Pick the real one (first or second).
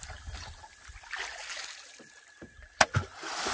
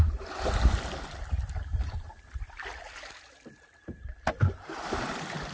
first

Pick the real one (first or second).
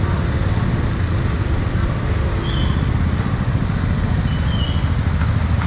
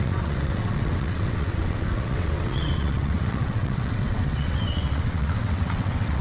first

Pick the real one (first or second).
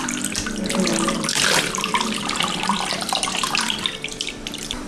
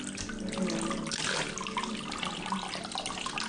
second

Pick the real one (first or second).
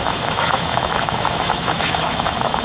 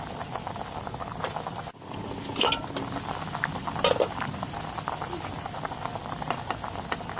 second